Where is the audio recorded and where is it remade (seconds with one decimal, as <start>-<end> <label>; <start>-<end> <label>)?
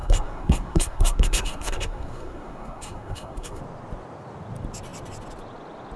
0.0-3.6 remade; 3.6-6.0 recorded